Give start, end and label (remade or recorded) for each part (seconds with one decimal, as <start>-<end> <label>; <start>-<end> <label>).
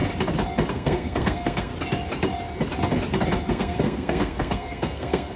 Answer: 0.0-0.7 recorded; 0.7-1.7 remade; 1.7-3.5 recorded; 3.5-5.4 remade